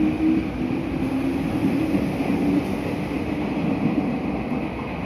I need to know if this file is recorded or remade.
recorded